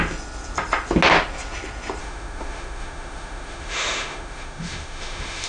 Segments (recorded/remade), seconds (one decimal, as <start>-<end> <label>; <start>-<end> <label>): 0.0-2.0 recorded; 2.0-5.5 remade